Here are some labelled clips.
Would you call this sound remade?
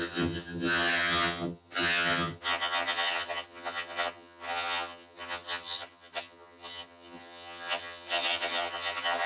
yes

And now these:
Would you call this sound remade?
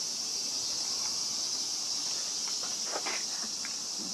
no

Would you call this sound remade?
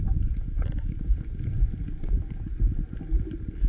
no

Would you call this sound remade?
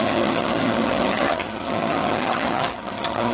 yes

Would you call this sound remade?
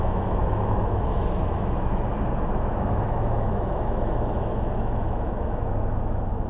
yes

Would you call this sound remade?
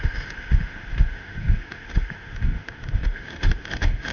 yes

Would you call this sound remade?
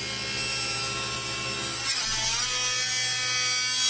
no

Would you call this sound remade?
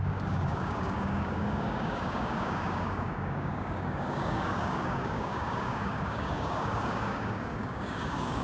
yes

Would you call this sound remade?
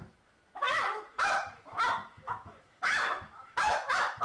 yes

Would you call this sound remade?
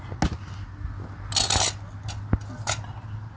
no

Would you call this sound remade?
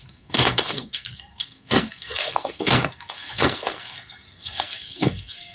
yes